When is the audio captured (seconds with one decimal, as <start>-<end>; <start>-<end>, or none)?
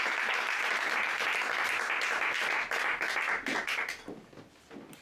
0.0-5.0